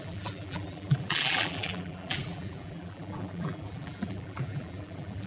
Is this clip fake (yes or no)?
yes